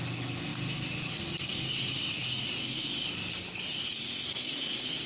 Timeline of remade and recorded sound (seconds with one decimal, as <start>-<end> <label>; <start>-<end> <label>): 0.0-5.1 recorded